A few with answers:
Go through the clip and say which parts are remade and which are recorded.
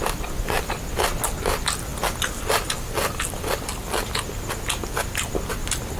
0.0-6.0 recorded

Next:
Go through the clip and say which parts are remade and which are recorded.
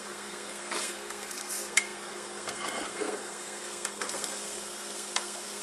0.0-5.6 remade